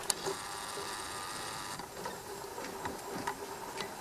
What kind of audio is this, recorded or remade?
recorded